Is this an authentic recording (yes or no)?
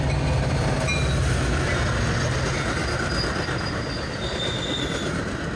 yes